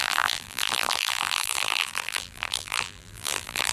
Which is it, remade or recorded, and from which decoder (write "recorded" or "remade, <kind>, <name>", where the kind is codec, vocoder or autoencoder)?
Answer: remade, vocoder, BigVGAN v2